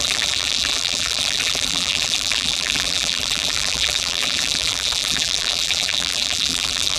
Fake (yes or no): yes